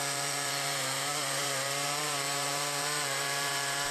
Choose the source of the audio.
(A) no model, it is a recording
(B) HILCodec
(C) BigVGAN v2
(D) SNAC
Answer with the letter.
C